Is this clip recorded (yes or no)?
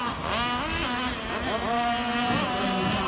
yes